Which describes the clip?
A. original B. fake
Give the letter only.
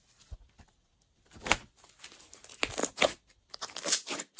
A